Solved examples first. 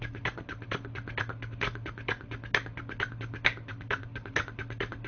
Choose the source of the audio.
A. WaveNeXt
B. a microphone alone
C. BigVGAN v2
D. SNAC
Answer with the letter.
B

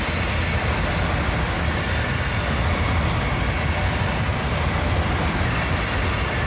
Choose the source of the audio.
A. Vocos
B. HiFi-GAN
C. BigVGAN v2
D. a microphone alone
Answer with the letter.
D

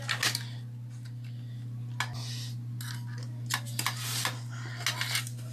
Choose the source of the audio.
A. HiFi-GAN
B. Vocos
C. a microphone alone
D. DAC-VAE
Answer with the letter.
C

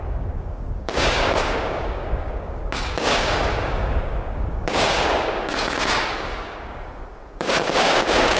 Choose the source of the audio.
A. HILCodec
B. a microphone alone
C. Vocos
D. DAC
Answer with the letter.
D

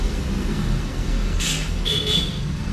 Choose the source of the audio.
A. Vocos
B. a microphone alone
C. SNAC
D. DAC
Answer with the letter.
C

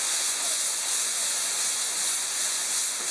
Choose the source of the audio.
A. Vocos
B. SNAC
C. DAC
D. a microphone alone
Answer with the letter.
A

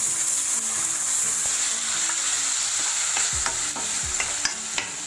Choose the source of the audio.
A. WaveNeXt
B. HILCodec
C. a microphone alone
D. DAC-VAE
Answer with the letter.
C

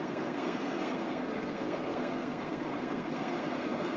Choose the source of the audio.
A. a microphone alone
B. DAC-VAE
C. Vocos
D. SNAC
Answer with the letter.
D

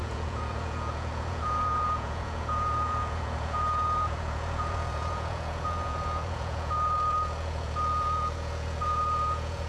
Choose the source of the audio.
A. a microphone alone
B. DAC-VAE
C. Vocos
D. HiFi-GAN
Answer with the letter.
C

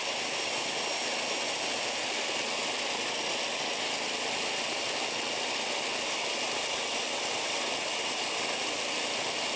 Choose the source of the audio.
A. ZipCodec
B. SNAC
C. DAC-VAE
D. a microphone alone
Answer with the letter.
D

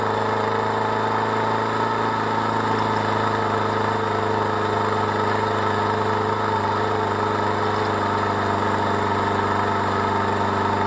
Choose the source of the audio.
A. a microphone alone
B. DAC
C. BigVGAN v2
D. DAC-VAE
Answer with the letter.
A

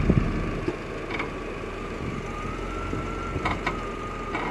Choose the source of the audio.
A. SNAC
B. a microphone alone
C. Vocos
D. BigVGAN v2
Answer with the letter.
B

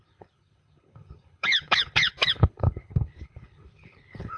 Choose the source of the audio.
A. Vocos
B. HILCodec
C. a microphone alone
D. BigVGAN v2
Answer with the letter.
B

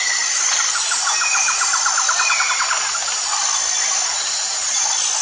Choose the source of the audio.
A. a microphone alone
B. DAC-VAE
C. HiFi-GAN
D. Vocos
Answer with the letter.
A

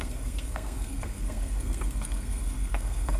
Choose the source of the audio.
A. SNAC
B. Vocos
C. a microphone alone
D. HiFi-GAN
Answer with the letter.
A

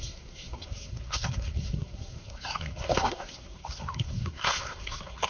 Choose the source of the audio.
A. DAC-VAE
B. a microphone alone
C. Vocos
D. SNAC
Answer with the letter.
D